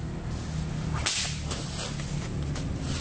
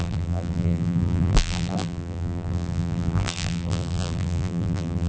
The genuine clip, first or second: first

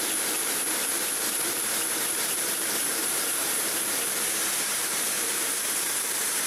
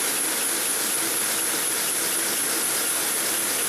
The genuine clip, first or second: second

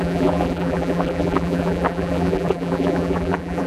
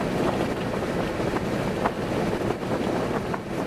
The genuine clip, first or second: second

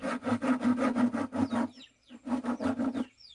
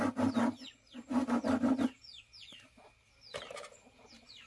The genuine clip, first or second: first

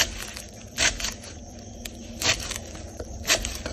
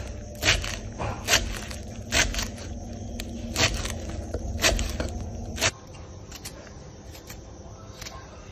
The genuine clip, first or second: second